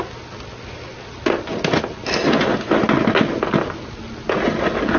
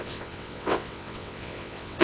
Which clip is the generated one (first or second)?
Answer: second